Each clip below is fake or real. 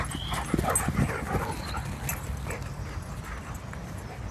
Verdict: real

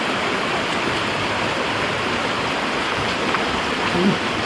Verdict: real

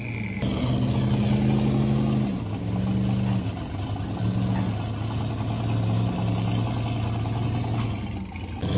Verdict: real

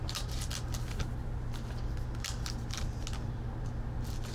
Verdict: real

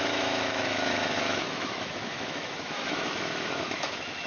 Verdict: fake